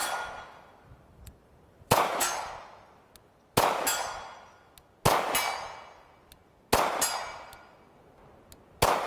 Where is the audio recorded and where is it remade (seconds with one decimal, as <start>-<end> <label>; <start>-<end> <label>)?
0.0-2.5 remade; 2.5-9.1 recorded